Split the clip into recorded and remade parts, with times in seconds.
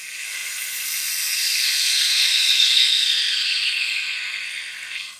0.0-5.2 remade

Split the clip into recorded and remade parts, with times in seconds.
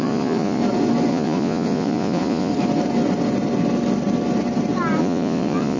0.0-0.6 remade; 0.6-1.1 recorded; 1.1-2.5 remade; 2.5-5.0 recorded; 5.0-5.8 remade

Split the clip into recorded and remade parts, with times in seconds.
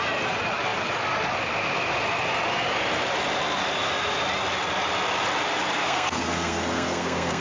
0.0-5.8 recorded; 5.8-7.4 remade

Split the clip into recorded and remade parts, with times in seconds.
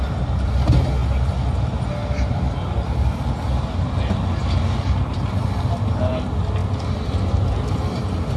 0.0-8.4 recorded